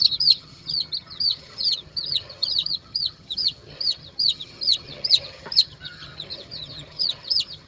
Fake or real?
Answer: fake